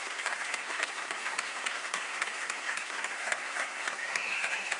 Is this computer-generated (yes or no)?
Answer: yes